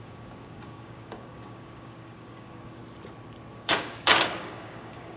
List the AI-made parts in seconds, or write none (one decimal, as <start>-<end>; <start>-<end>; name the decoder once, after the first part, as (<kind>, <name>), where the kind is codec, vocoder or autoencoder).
0.0-2.8 (codec, DAC); 3.5-5.2